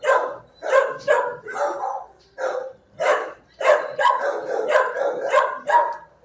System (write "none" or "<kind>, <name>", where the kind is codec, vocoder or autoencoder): vocoder, BigVGAN v2